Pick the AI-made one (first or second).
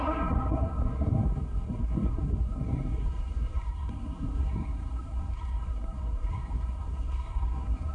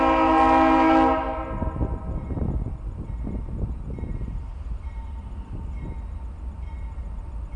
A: first